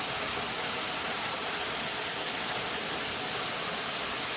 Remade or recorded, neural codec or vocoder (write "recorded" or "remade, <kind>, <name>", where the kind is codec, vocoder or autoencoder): recorded